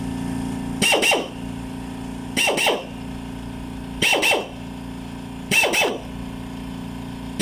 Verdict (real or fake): real